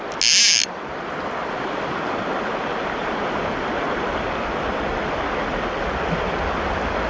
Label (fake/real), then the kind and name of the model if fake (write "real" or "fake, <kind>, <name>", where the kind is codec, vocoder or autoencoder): real